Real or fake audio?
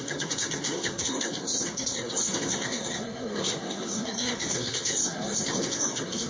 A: fake